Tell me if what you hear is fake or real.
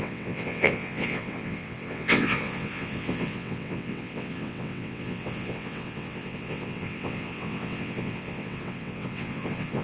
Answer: fake